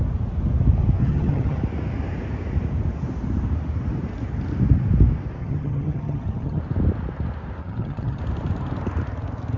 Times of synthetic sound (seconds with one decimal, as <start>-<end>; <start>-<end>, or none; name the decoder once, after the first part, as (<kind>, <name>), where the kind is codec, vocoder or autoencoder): 1.0-1.6 (vocoder, HiFi-GAN); 5.4-6.6; 7.6-8.2